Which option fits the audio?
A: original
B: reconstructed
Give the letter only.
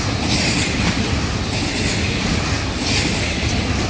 A